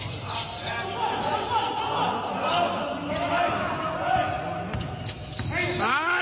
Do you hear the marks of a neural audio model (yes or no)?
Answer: no